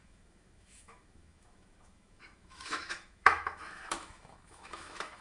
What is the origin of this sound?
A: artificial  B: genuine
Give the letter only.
A